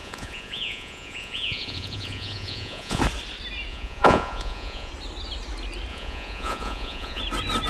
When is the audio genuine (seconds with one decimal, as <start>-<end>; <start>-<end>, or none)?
3.0-3.7; 4.9-5.9; 7.2-7.7